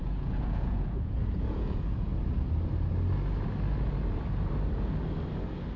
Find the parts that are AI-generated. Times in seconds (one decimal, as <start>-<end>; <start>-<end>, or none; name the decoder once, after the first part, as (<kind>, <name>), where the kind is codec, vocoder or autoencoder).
0.0-2.1 (vocoder, Vocos)